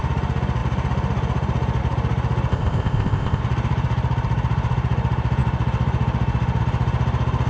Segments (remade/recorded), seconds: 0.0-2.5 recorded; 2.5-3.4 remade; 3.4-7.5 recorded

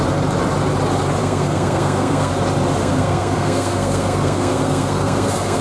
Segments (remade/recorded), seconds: 0.0-1.2 recorded; 1.2-2.3 remade; 2.3-2.8 recorded; 2.8-5.6 remade

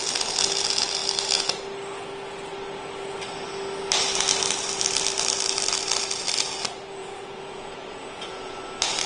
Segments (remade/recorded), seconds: 0.0-7.0 recorded; 7.0-8.6 remade; 8.6-9.1 recorded

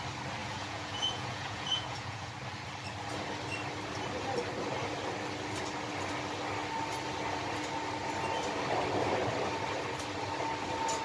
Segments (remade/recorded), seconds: 0.0-0.4 recorded; 0.4-2.3 remade; 2.3-11.0 recorded

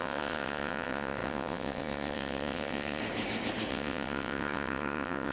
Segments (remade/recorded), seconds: 0.0-3.0 remade; 3.0-3.7 recorded; 3.7-5.3 remade

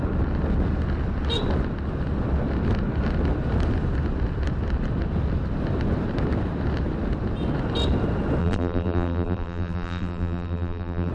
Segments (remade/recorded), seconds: 0.0-8.4 recorded; 8.4-11.1 remade